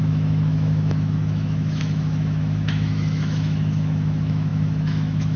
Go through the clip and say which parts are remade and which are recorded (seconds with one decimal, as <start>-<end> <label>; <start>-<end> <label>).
0.0-5.4 remade